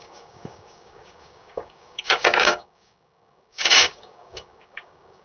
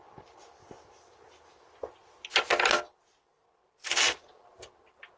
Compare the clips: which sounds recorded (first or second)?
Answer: second